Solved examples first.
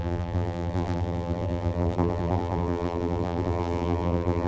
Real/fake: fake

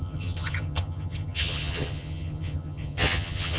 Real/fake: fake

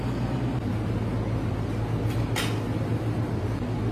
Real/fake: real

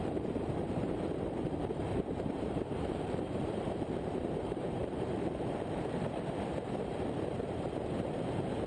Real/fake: fake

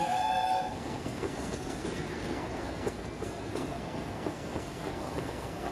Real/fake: fake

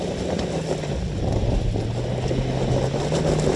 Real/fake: real